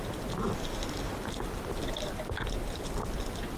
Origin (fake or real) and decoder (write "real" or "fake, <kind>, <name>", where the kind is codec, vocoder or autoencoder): fake, vocoder, BigVGAN v2